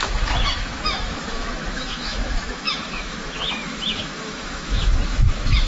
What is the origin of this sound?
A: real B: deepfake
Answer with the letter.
B